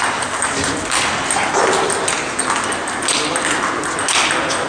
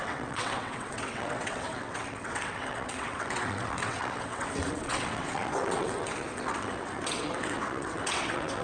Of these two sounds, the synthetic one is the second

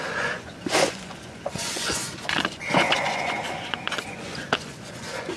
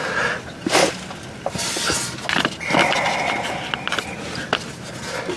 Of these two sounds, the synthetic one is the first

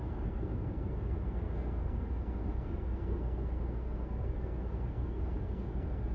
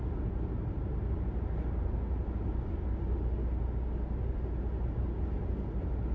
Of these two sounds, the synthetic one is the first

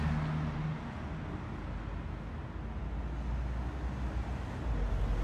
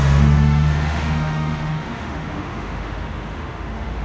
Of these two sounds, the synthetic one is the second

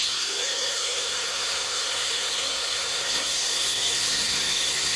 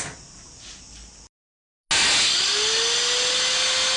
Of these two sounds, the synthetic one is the first